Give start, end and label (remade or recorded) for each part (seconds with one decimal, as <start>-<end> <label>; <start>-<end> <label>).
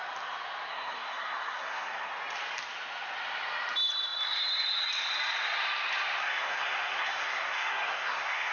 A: 0.0-0.7 recorded; 0.7-2.1 remade; 2.1-6.2 recorded; 6.2-8.5 remade